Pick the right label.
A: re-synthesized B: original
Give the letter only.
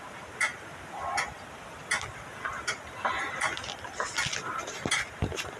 B